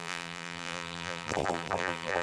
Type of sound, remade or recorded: remade